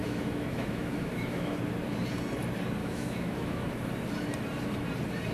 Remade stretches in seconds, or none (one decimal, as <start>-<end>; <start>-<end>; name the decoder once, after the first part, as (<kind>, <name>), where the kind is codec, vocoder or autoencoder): 0.0-1.5 (autoencoder, DAC-VAE); 2.8-3.7